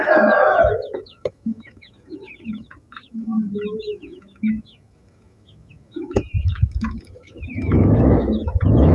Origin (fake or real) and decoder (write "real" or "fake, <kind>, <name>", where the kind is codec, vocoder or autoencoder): fake, autoencoder, DAC-VAE